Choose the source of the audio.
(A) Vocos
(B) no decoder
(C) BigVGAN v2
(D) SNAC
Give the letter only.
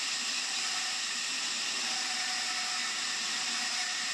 B